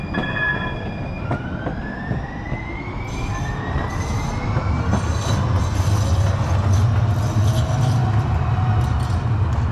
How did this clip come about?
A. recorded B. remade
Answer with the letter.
A